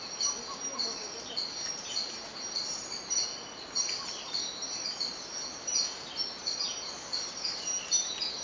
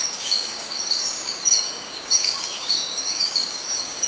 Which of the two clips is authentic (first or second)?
first